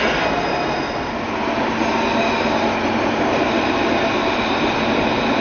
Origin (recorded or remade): recorded